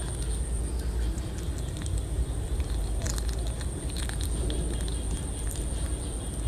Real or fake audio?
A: real